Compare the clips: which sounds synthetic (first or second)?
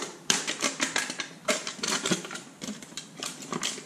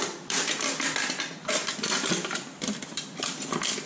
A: first